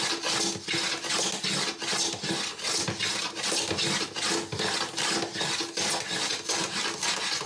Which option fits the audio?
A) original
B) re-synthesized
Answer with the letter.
A